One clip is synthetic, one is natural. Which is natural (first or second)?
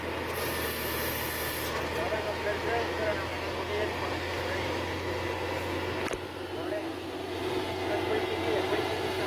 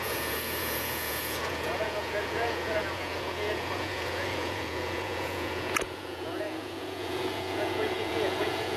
first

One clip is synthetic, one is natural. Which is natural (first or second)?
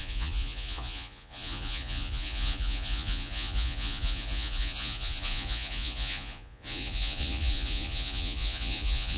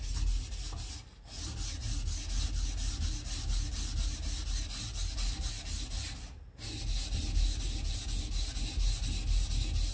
second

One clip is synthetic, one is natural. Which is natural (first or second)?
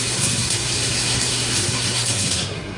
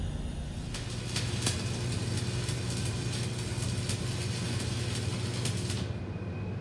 second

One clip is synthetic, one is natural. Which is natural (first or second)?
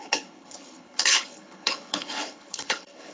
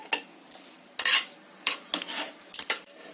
second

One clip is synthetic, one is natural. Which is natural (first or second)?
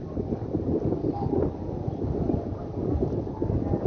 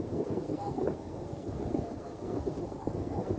first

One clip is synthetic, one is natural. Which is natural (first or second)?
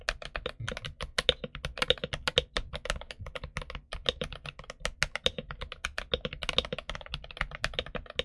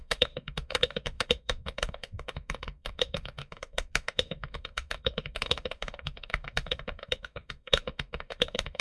first